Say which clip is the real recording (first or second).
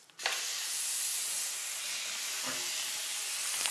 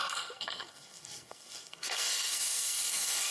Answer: first